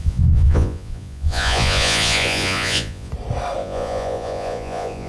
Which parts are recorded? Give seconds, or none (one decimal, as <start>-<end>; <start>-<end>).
3.1-3.6